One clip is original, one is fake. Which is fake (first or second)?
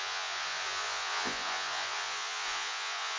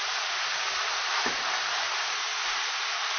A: first